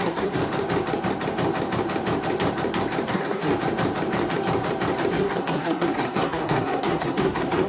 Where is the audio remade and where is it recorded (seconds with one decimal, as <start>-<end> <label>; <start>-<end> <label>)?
0.0-0.4 remade; 0.4-3.1 recorded; 3.1-3.5 remade; 3.5-5.1 recorded; 5.1-7.7 remade